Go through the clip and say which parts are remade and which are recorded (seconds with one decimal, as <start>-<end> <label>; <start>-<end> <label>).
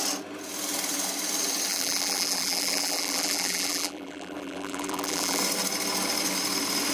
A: 0.0-1.7 recorded; 1.7-5.4 remade; 5.4-6.9 recorded